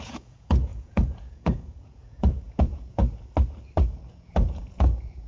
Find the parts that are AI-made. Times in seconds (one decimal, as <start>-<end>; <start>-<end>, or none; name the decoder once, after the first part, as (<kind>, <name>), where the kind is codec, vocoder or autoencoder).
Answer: 0.0-3.0 (vocoder, Vocos); 4.1-5.3